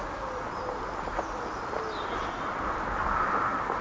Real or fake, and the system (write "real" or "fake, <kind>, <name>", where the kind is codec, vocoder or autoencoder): real